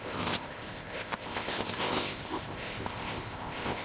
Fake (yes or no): yes